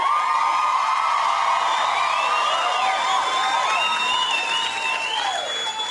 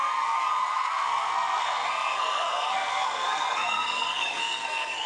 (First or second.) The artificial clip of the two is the second